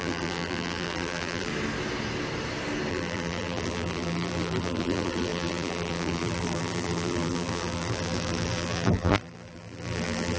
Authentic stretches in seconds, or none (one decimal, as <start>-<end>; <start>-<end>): 1.5-2.9